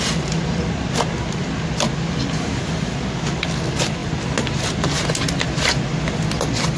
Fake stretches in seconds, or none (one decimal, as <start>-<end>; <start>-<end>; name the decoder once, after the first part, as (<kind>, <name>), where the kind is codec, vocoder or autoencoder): none